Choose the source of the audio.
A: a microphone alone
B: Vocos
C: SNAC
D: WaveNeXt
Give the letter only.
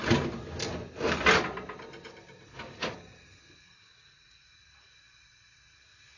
A